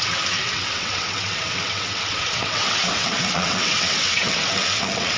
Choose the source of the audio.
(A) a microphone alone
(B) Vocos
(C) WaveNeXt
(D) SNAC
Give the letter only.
C